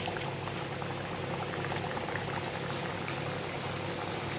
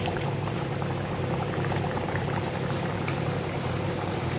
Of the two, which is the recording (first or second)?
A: first